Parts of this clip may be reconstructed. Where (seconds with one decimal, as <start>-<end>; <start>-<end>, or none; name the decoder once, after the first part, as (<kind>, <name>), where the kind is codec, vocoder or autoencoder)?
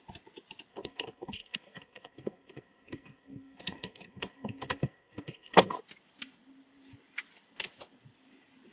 0.7-5.8 (codec, SNAC)